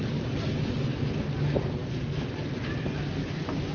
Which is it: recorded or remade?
recorded